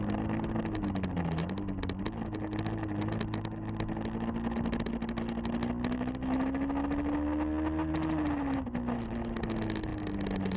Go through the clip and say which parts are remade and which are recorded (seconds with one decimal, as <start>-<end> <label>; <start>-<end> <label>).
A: 0.0-10.6 recorded